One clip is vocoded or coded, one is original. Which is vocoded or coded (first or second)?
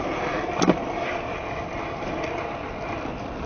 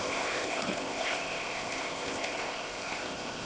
second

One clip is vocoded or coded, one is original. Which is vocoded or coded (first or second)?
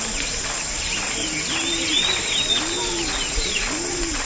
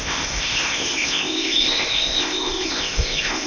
second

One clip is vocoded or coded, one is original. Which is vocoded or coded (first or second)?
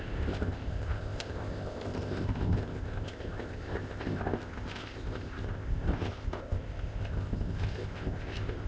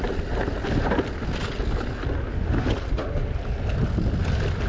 first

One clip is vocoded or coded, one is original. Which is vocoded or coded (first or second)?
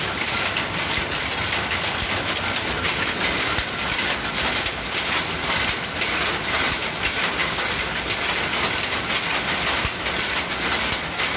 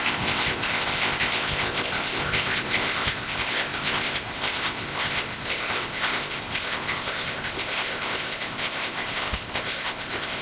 second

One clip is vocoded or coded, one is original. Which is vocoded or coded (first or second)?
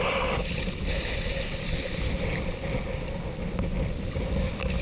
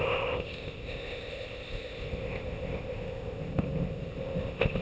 second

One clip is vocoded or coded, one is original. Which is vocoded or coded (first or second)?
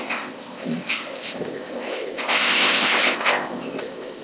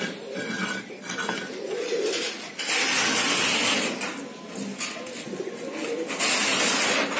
first